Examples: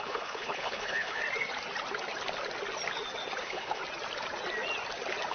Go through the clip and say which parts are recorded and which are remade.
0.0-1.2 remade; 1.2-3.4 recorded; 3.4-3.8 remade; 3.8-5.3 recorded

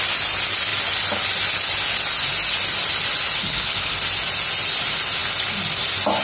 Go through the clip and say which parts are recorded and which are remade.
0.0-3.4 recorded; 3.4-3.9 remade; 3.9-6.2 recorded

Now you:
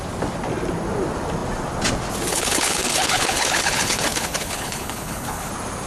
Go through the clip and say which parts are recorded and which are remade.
0.0-2.3 recorded; 2.3-5.5 remade; 5.5-5.9 recorded

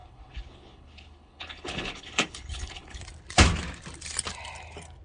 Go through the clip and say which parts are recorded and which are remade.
0.0-3.0 remade; 3.0-5.0 recorded

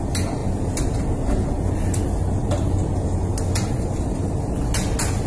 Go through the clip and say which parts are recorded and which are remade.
0.0-5.3 recorded